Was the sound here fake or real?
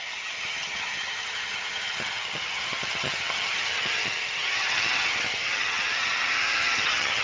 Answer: fake